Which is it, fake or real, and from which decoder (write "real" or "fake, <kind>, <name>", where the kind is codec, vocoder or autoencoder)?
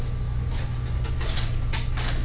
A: real